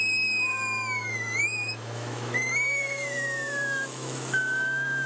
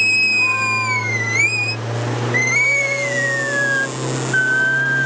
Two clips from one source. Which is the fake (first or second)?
first